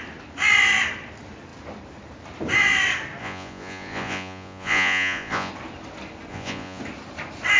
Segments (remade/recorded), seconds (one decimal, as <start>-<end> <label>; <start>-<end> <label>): 0.0-3.2 recorded; 3.2-5.5 remade; 5.5-6.3 recorded; 6.3-6.8 remade; 6.8-7.6 recorded